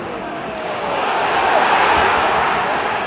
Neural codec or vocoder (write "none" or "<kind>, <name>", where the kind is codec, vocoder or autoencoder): codec, DAC